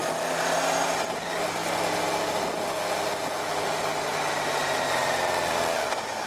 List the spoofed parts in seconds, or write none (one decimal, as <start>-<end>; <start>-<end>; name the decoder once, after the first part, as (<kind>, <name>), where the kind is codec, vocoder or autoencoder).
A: none